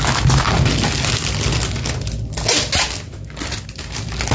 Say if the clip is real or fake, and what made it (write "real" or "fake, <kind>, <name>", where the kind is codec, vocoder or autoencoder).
real